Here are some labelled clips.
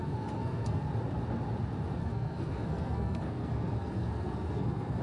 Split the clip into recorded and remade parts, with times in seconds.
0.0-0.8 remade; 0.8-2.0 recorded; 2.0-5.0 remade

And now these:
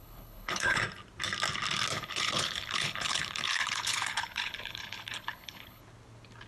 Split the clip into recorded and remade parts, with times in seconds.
0.0-0.8 remade; 0.8-1.9 recorded; 1.9-5.8 remade; 5.8-6.5 recorded

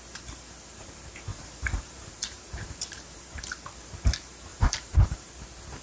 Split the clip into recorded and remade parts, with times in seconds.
0.0-1.3 recorded; 1.3-3.4 remade; 3.4-4.5 recorded; 4.5-5.3 remade; 5.3-5.8 recorded

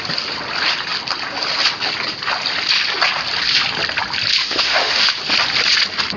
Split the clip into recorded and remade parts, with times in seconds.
0.0-4.4 recorded; 4.4-5.1 remade; 5.1-6.2 recorded

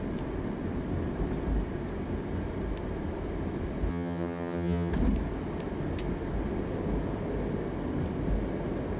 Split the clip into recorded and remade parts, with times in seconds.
0.0-3.9 recorded; 3.9-4.9 remade; 4.9-9.0 recorded

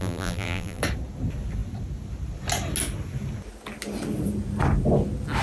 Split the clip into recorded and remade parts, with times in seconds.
0.0-0.8 remade; 0.8-5.4 recorded

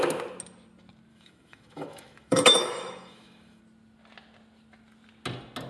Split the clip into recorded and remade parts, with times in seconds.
0.0-1.1 recorded; 1.1-3.6 remade; 3.6-5.7 recorded

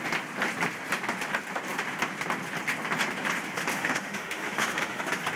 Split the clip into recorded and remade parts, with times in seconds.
0.0-3.7 recorded; 3.7-5.0 remade; 5.0-5.4 recorded